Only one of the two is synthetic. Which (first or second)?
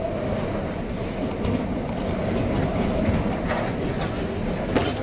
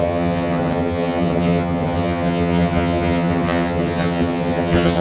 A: second